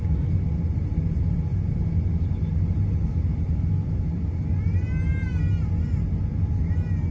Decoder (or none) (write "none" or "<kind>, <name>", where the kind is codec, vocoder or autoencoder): none